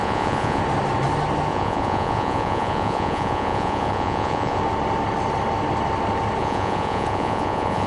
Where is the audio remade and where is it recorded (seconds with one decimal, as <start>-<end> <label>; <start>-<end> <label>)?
0.0-0.6 remade; 0.6-1.5 recorded; 1.5-4.6 remade; 4.6-6.4 recorded; 6.4-7.9 remade

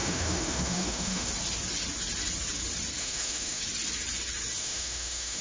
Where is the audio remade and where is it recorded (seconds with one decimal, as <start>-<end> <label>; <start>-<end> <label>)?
0.0-1.3 remade; 1.3-3.0 recorded; 3.0-3.6 remade; 3.6-4.6 recorded; 4.6-5.4 remade

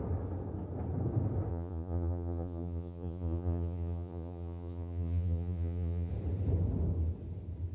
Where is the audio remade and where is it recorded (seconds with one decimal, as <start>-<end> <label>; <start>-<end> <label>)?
0.0-1.5 recorded; 1.5-6.1 remade; 6.1-7.7 recorded

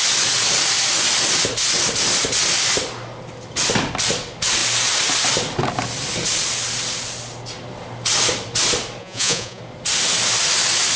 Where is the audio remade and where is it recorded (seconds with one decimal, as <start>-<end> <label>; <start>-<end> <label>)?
0.0-9.0 recorded; 9.0-9.6 remade; 9.6-11.0 recorded

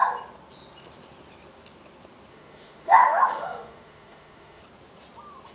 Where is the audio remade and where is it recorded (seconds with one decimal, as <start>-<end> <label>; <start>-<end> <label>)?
0.0-2.3 recorded; 2.3-4.6 remade; 4.6-5.5 recorded

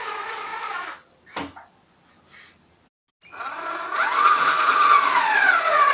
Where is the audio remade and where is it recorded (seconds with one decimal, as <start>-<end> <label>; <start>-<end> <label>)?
0.0-0.5 remade; 0.5-3.5 recorded; 3.5-5.9 remade